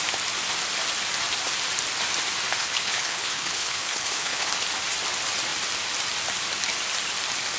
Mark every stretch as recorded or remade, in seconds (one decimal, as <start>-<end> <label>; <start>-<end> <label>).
0.0-2.6 recorded; 2.6-4.6 remade; 4.6-7.6 recorded